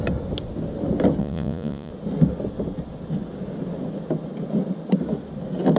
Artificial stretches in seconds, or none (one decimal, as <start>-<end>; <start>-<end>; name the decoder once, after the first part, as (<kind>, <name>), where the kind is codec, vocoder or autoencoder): 1.2-1.9 (vocoder, Vocos)

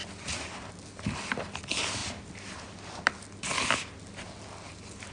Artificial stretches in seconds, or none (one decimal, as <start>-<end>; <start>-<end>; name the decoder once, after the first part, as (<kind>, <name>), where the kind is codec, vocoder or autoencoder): none